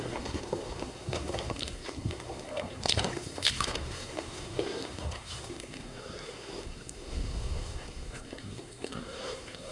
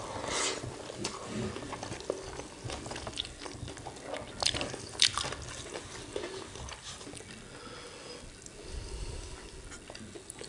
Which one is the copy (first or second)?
first